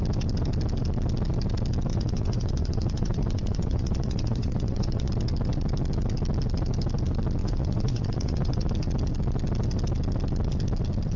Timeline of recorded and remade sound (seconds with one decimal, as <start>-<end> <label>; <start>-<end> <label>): 0.0-1.9 recorded; 1.9-5.1 remade; 5.1-7.4 recorded; 7.4-8.7 remade; 8.7-11.2 recorded